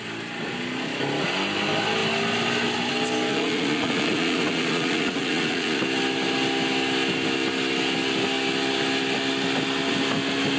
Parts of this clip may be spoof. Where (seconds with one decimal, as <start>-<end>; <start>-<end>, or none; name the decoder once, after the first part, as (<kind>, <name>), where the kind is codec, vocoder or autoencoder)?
3.3-5.8 (vocoder, Vocos)